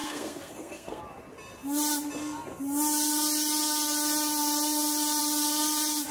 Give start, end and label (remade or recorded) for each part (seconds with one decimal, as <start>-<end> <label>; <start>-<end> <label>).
0.0-1.0 remade; 1.0-6.1 recorded